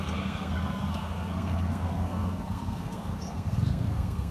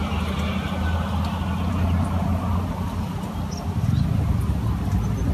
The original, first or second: second